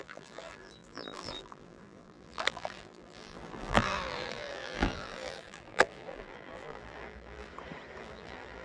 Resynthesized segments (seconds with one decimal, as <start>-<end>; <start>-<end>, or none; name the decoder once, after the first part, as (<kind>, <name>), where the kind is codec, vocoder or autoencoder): 0.0-7.5 (vocoder, BigVGAN v2); 8.0-8.6